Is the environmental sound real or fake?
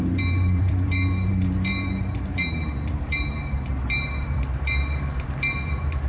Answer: fake